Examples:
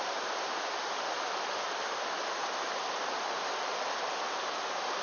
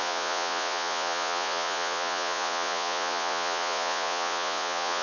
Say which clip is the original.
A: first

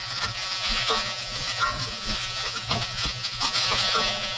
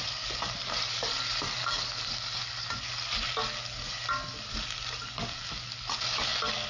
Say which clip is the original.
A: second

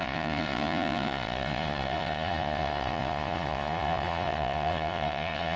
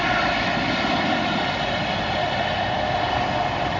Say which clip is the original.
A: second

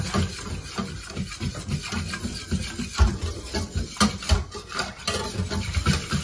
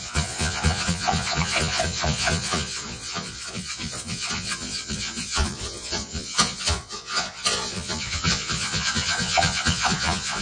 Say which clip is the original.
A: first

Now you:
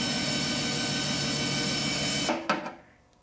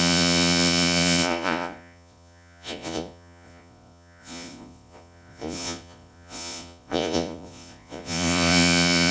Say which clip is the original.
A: first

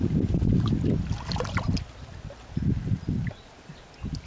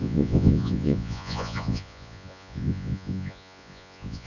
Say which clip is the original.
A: first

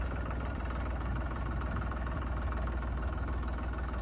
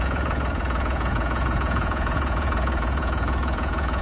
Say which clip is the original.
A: first